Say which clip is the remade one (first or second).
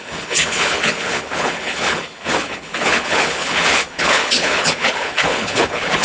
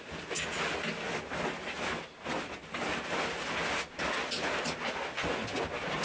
first